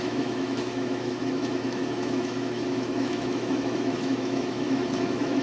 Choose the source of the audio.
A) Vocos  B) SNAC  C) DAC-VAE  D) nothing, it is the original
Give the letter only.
C